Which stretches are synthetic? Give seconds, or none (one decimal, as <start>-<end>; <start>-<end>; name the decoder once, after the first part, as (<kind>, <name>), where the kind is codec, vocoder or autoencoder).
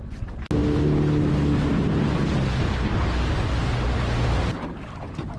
none